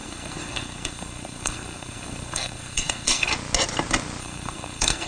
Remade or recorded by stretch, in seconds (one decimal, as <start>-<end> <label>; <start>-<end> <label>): 0.0-3.3 remade; 3.3-4.2 recorded; 4.2-5.1 remade